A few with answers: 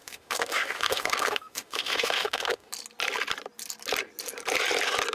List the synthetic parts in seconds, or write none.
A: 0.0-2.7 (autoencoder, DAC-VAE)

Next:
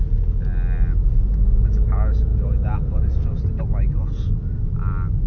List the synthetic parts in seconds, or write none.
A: none

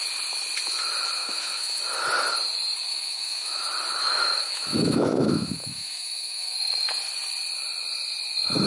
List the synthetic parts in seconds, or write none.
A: 1.2-1.8 (autoencoder, DAC-VAE); 2.9-3.6; 4.1-6.9

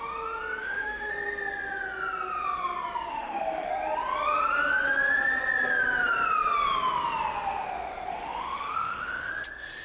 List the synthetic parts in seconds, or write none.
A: 0.6-1.1 (autoencoder, DAC-VAE); 3.1-3.7; 8.1-9.3

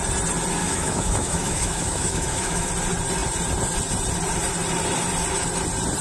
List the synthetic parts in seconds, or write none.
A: 0.6-2.7 (autoencoder, DAC-VAE)

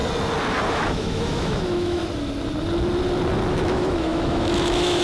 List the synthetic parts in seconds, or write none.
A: 0.7-2.0 (autoencoder, DAC-VAE); 3.5-5.0

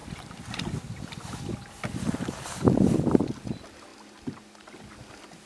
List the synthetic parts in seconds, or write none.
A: none

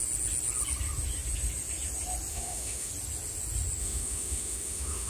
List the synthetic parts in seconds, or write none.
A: 2.3-2.9 (autoencoder, DAC-VAE); 3.8-5.1